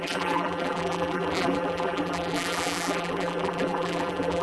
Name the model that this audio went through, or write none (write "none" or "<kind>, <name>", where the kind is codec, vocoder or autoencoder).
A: vocoder, BigVGAN v2